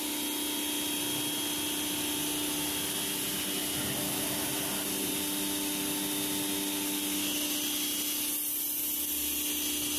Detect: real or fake real